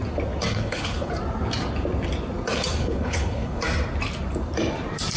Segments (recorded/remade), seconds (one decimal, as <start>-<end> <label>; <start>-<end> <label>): 0.0-0.5 recorded; 0.5-1.1 remade; 1.1-2.8 recorded; 2.8-3.6 remade; 3.6-5.2 recorded